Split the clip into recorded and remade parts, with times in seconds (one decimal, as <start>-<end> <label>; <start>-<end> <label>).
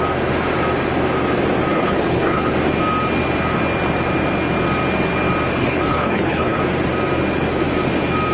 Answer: 0.0-1.7 recorded; 1.7-2.5 remade; 2.5-5.6 recorded; 5.6-6.6 remade; 6.6-8.3 recorded